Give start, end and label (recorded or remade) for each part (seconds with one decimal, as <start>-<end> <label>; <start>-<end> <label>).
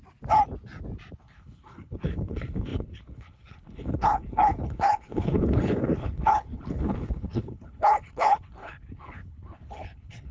0.0-1.2 recorded; 1.2-10.3 remade